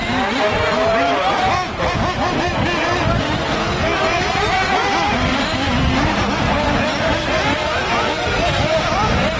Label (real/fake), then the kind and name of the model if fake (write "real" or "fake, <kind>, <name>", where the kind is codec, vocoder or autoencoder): real